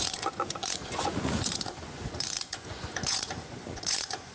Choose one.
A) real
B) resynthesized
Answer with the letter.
B